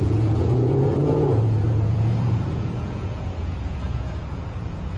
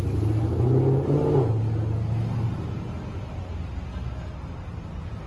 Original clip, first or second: second